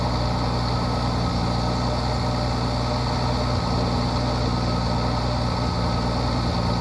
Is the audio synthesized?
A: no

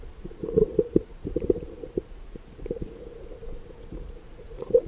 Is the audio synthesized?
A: yes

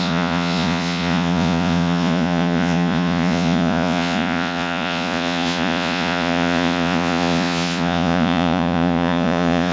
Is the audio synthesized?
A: yes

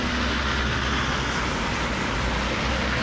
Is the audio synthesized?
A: no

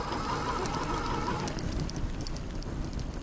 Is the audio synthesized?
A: no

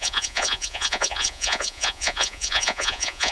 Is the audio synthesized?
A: yes